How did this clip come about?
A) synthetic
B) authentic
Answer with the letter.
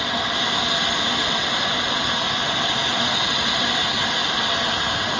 B